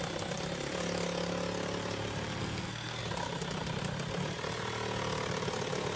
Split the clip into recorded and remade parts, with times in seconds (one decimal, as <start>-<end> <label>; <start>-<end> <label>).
0.0-2.4 recorded; 2.4-3.0 remade; 3.0-6.0 recorded

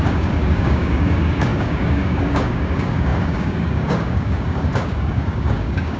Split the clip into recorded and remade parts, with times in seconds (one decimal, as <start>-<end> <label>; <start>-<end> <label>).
0.0-6.0 remade

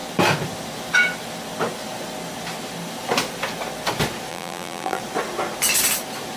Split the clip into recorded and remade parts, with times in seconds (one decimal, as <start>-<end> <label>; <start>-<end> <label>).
0.0-4.3 recorded; 4.3-5.0 remade; 5.0-6.4 recorded

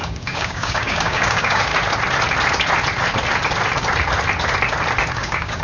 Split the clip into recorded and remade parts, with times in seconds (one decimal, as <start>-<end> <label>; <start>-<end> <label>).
0.0-1.7 remade; 1.7-5.1 recorded; 5.1-5.6 remade

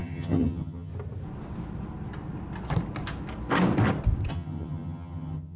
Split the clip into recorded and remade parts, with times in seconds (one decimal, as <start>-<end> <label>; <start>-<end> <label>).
0.0-0.9 remade; 0.9-4.3 recorded; 4.3-5.6 remade

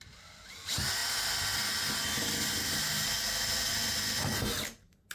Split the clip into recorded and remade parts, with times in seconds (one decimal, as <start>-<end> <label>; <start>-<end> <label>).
0.0-5.1 recorded

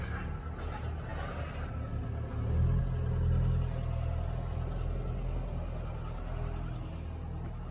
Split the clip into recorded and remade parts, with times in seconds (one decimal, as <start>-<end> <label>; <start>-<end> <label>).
0.0-7.7 recorded